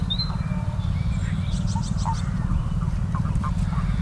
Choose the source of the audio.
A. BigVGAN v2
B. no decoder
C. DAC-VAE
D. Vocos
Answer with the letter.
A